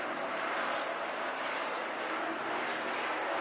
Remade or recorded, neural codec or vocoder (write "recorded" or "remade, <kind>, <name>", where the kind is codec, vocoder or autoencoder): remade, vocoder, BigVGAN v2